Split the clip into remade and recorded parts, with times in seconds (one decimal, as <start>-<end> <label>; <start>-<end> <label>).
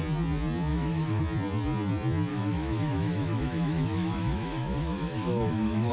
0.0-0.7 recorded; 0.7-1.2 remade; 1.2-2.3 recorded; 2.3-5.9 remade